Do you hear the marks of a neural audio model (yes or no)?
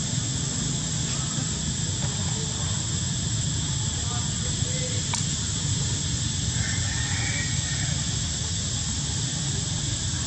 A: no